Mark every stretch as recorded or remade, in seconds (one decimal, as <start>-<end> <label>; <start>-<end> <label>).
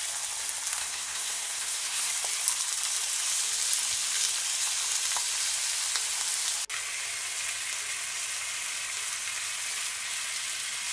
0.0-0.8 recorded; 0.8-2.1 remade; 2.1-10.9 recorded